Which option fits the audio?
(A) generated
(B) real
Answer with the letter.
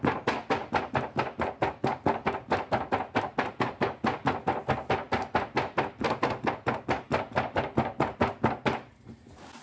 B